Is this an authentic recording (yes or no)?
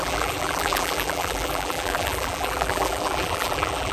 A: no